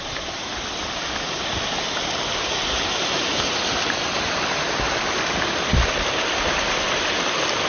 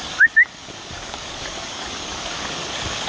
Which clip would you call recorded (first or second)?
first